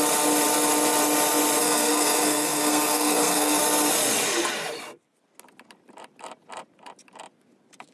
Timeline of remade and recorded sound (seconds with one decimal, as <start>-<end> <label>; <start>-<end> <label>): 0.0-1.6 recorded; 1.6-3.6 remade; 3.6-7.9 recorded